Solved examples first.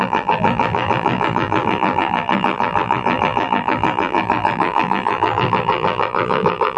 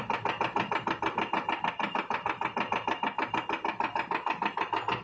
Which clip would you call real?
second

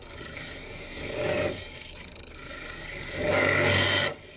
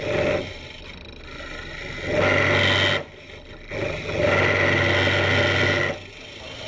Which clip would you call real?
second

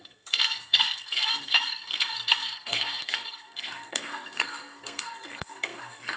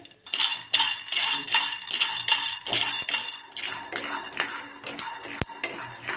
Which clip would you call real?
second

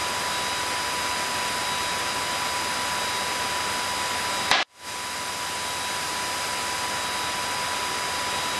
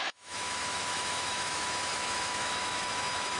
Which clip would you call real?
first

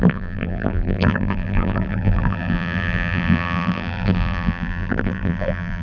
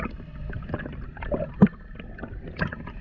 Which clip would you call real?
second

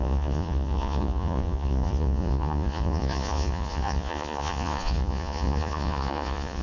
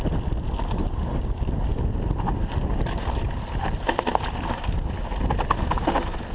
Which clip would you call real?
second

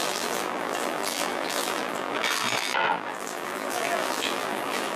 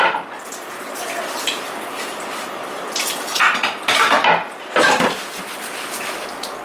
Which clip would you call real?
second